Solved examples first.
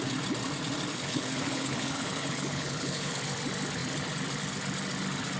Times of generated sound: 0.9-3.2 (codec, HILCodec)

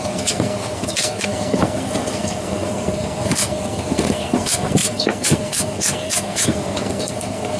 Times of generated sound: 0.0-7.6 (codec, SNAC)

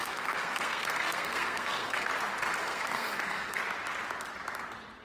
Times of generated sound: 0.0-2.1 (codec, SNAC); 2.6-3.6

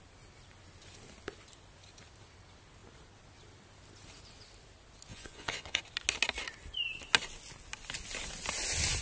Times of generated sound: 5.1-5.8 (vocoder, Vocos)

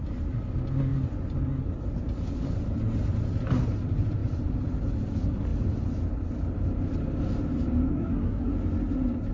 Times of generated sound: 7.9-8.5 (codec, SNAC)

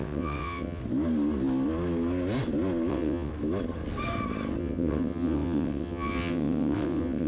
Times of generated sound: 0.0-0.8 (vocoder, WaveNeXt); 2.9-3.3; 4.6-7.3

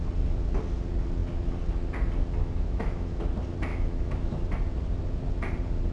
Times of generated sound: 2.4-3.2 (autoencoder, DAC-VAE); 3.7-4.4

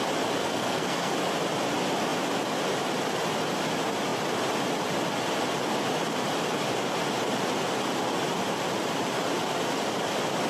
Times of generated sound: 0.4-1.1 (codec, SNAC)